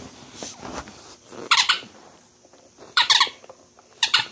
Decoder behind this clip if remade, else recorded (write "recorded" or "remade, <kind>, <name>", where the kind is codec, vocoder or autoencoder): remade, vocoder, BigVGAN v2